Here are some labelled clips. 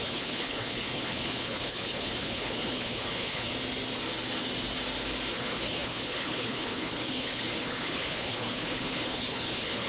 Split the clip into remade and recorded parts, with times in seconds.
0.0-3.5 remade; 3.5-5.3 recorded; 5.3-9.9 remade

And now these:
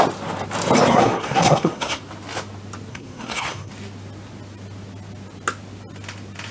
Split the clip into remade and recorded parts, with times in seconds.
0.0-0.9 recorded; 0.9-2.0 remade; 2.0-2.9 recorded; 2.9-3.7 remade; 3.7-6.5 recorded

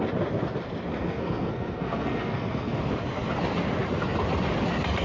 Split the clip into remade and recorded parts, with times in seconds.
0.0-0.9 recorded; 0.9-2.8 remade; 2.8-5.0 recorded

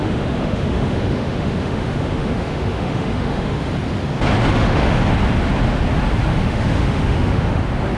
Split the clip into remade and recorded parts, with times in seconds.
0.0-3.7 remade; 3.7-4.5 recorded; 4.5-5.1 remade; 5.1-6.3 recorded; 6.3-7.6 remade; 7.6-8.0 recorded

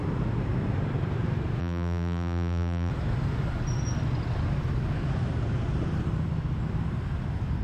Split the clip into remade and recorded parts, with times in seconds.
0.0-1.6 recorded; 1.6-2.9 remade; 2.9-7.6 recorded

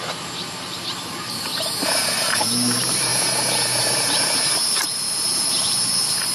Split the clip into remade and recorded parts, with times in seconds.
0.0-1.5 remade; 1.5-2.4 recorded; 2.4-3.1 remade; 3.1-3.8 recorded; 3.8-6.3 remade